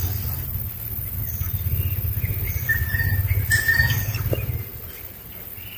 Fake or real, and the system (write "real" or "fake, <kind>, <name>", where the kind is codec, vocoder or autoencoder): real